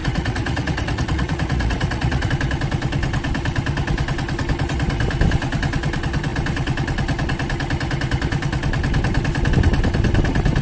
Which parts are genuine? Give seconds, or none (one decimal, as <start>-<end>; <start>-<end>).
2.3-10.6